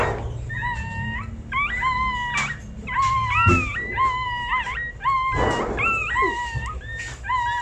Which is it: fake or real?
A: real